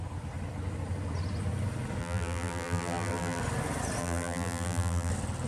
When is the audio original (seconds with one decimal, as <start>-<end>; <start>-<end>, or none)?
0.0-2.0; 3.4-4.0; 5.1-5.5